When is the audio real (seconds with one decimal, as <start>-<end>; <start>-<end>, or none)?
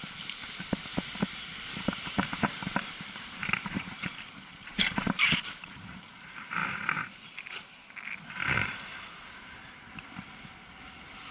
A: 0.0-0.9; 6.1-6.6; 7.8-8.4; 9.0-11.3